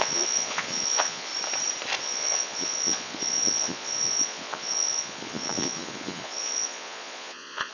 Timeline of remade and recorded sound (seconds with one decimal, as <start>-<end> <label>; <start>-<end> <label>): 0.0-1.3 remade; 1.3-2.0 recorded; 2.0-7.7 remade